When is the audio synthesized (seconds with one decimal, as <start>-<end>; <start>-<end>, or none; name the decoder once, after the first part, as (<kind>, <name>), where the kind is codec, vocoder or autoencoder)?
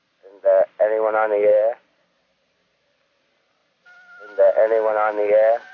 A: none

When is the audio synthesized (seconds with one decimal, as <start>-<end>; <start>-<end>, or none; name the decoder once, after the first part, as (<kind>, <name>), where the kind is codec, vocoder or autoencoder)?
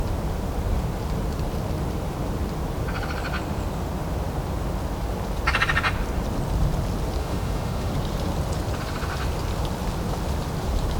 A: 7.2-7.9 (autoencoder, DAC-VAE)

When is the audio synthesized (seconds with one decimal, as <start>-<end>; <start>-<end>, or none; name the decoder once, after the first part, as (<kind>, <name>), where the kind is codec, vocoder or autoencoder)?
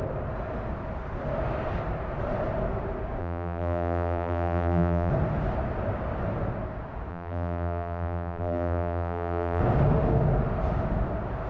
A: 3.2-5.1 (vocoder, BigVGAN v2); 7.1-9.6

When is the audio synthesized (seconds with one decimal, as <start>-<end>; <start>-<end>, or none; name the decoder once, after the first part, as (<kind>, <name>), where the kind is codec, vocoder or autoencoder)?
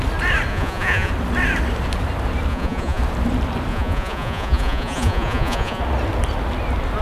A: 0.5-1.1 (vocoder, Vocos); 2.5-3.0; 3.7-5.8